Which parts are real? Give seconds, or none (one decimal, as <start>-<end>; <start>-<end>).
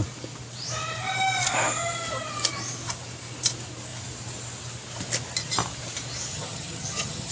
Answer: 0.0-6.3